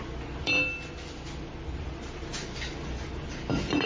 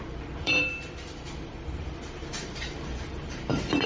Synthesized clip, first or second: second